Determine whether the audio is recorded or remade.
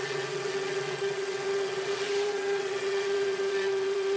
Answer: remade